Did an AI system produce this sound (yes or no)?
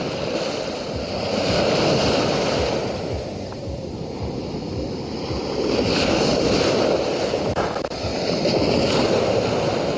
no